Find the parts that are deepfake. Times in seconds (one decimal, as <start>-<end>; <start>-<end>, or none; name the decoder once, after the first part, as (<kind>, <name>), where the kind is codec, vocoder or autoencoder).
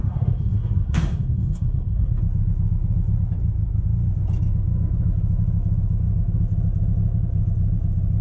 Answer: 0.0-2.2 (codec, SNAC)